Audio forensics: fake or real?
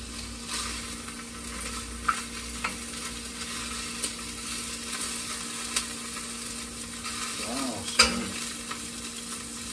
real